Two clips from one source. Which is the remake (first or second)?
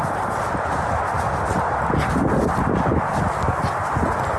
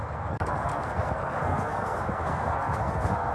second